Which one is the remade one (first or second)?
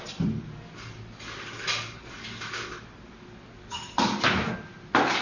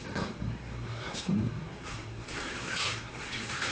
second